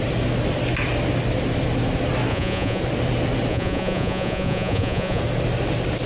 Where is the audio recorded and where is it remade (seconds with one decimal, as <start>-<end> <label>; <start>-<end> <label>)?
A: 0.0-2.3 recorded; 2.3-2.8 remade; 2.8-3.5 recorded; 3.5-5.2 remade; 5.2-6.1 recorded